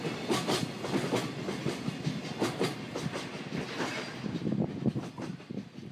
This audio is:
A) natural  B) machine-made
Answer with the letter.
A